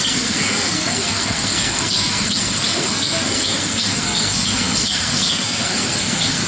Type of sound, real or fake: fake